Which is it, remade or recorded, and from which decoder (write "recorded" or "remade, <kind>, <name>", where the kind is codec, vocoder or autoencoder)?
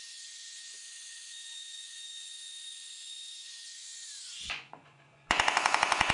remade, vocoder, Vocos